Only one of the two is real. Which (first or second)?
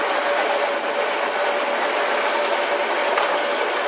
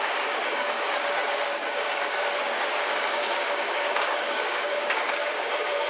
first